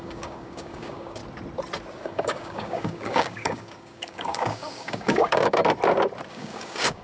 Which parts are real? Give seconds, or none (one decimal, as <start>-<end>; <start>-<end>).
1.2-2.0; 5.6-6.3